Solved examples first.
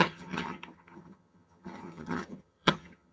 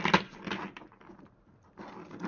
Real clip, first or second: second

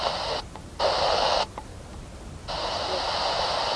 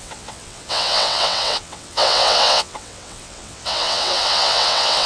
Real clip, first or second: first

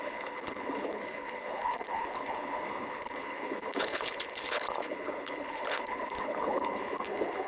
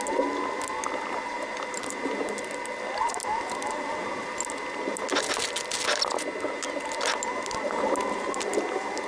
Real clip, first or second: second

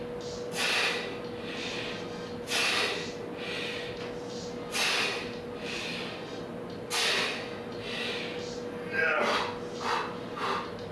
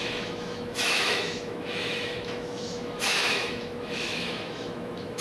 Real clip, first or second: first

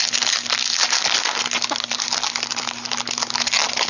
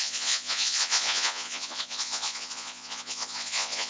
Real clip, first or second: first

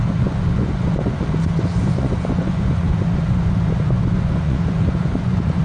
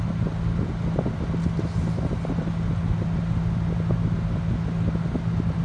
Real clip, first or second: second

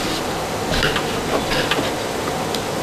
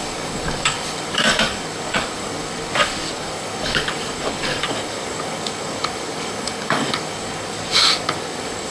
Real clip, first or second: first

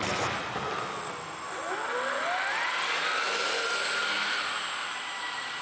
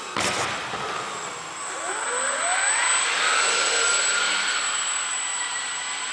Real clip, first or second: first